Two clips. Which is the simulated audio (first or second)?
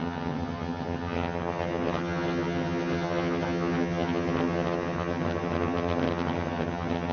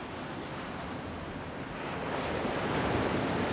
first